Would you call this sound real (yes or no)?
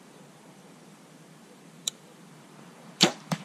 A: no